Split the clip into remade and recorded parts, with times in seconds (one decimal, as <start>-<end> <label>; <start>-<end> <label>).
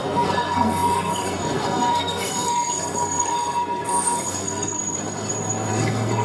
0.0-4.8 remade; 4.8-5.7 recorded; 5.7-6.2 remade